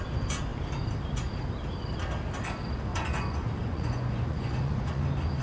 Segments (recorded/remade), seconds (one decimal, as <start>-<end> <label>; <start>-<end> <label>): 0.0-2.9 recorded; 2.9-5.0 remade; 5.0-5.4 recorded